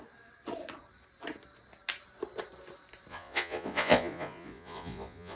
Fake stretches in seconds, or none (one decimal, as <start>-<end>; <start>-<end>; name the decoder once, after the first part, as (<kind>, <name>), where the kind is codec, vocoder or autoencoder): 3.1-5.4 (vocoder, Vocos)